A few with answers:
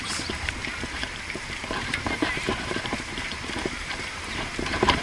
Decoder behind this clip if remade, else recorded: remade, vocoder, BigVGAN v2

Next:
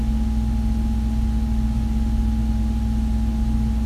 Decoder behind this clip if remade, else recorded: recorded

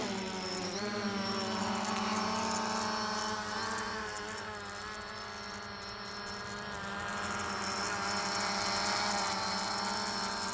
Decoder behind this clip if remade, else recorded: recorded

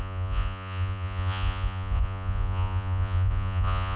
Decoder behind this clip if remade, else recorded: remade, vocoder, Vocos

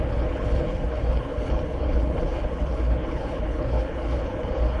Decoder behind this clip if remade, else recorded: remade, codec, HILCodec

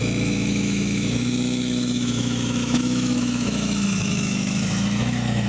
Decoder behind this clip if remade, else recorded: remade, autoencoder, DAC-VAE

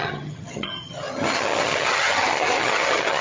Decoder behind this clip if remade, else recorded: remade, vocoder, HiFi-GAN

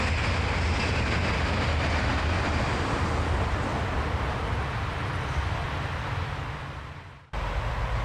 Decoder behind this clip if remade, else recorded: recorded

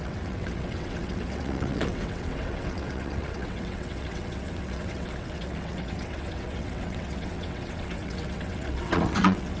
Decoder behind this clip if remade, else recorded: remade, vocoder, WaveNeXt